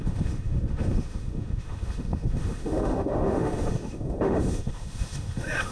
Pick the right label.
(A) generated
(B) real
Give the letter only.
A